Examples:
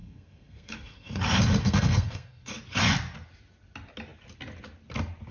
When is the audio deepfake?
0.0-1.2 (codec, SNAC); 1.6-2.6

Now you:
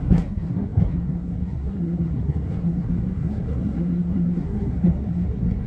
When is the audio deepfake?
0.0-5.7 (codec, SNAC)

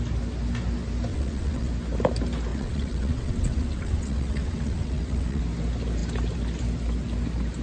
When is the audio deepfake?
1.1-1.7 (vocoder, WaveNeXt); 2.5-5.4

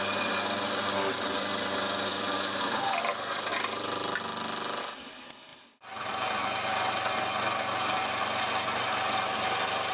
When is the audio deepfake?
2.1-3.0 (vocoder, BigVGAN v2); 3.5-4.8; 5.5-6.1

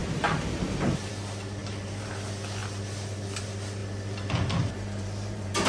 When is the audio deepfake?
0.0-1.1 (vocoder, BigVGAN v2); 1.6-2.1; 3.8-5.7